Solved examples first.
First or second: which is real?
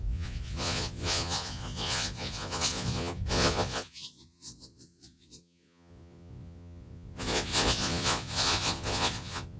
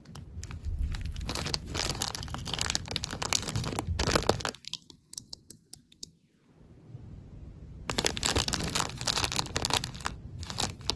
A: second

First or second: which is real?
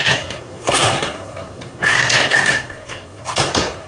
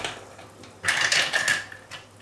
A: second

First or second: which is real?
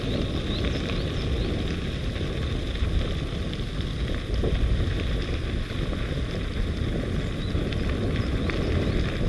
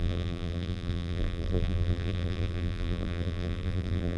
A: first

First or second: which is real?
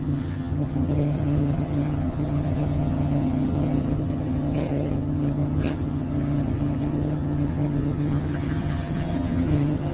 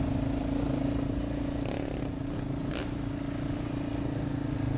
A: second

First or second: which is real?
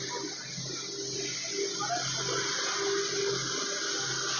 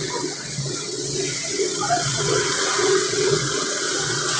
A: first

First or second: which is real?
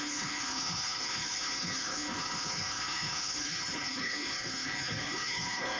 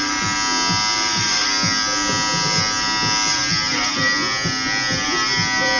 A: second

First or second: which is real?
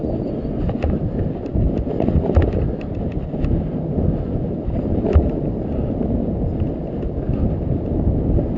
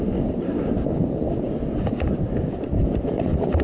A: first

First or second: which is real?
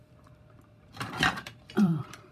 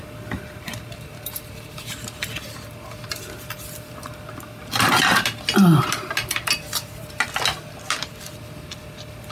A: second